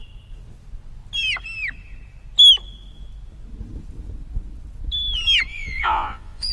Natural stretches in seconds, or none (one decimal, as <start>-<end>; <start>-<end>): 0.0-5.5